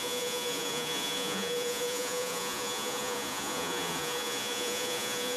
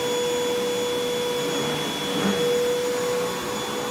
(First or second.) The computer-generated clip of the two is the first